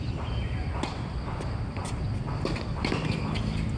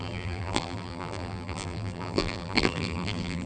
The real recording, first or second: first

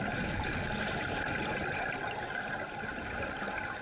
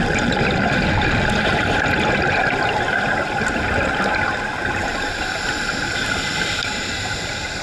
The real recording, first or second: first